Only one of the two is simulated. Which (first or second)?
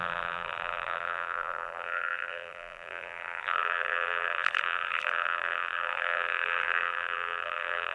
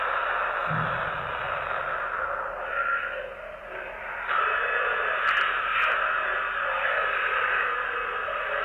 first